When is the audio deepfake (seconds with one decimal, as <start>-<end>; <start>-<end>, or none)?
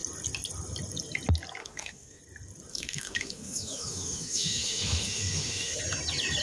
1.6-2.2; 2.7-5.8